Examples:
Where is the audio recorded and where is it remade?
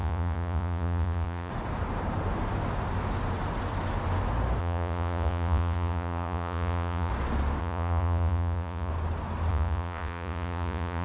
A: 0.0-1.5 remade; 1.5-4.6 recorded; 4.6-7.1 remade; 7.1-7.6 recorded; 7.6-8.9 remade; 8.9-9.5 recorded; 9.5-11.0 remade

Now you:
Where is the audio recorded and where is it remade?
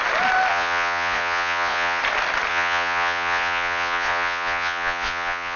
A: 0.0-0.5 recorded; 0.5-2.0 remade; 2.0-2.5 recorded; 2.5-5.6 remade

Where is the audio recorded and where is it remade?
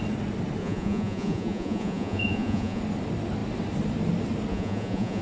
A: 0.0-0.6 recorded; 0.6-2.8 remade; 2.8-4.5 recorded; 4.5-5.2 remade